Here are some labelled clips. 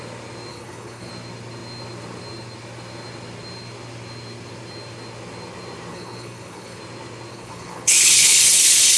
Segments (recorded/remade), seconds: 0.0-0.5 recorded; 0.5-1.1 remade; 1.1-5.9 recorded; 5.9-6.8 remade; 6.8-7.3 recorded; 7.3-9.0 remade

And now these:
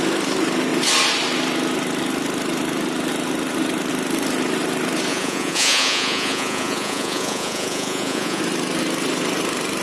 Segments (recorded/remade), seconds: 0.0-5.1 recorded; 5.1-8.4 remade; 8.4-9.8 recorded

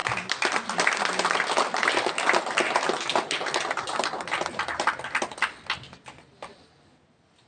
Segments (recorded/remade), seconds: 0.0-7.5 recorded